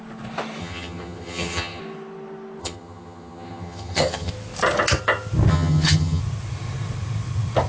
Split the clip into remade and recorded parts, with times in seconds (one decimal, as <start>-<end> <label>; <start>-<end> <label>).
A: 0.0-0.6 recorded; 0.6-1.8 remade; 1.8-2.6 recorded; 2.6-4.3 remade; 4.3-5.5 recorded; 5.5-6.2 remade; 6.2-7.7 recorded